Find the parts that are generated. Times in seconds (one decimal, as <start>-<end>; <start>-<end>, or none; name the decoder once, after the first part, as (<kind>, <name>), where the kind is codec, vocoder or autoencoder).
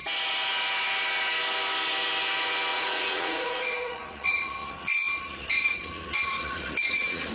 2.7-7.3 (vocoder, Vocos)